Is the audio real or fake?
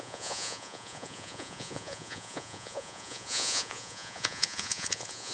fake